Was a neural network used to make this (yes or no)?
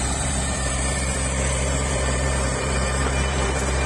yes